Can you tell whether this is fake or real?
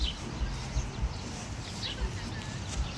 real